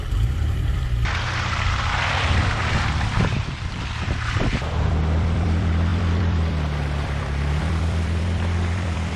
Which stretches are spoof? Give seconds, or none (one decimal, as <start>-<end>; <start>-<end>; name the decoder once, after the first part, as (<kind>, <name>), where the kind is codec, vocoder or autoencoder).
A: 0.0-9.2 (vocoder, BigVGAN v2)